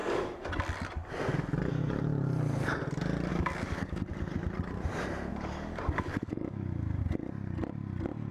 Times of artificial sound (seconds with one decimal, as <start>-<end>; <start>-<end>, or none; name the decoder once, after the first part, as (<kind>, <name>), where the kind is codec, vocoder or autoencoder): 0.0-0.5 (codec, DAC); 3.3-4.0; 5.3-7.0